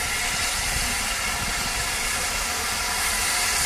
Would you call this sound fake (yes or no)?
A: no